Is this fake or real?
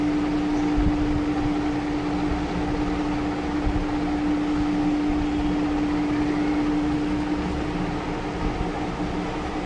real